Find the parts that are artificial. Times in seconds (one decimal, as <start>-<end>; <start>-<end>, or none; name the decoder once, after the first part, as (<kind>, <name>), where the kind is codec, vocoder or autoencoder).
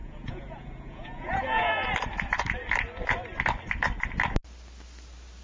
0.0-1.7 (vocoder, Vocos)